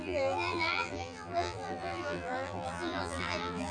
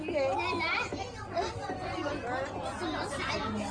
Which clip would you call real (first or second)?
second